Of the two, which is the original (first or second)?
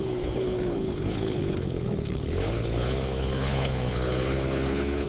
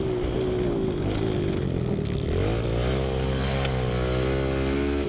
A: second